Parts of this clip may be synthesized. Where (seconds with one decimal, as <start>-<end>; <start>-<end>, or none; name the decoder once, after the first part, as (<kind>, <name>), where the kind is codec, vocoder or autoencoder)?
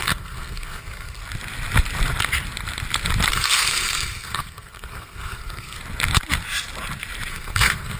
0.0-1.2 (codec, SNAC); 3.3-5.8; 7.3-8.0